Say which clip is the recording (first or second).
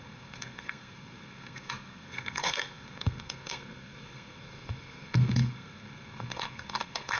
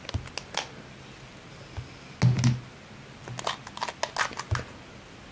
second